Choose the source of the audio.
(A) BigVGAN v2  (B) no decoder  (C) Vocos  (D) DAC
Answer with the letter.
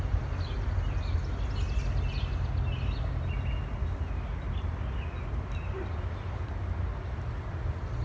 B